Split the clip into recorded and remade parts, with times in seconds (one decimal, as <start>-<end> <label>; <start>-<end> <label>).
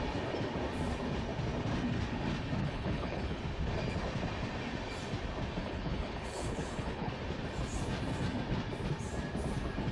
0.0-2.6 recorded; 2.6-3.4 remade; 3.4-5.6 recorded; 5.6-7.1 remade; 7.1-9.9 recorded